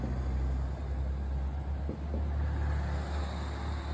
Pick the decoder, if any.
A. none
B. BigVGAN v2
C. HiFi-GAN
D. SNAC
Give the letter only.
A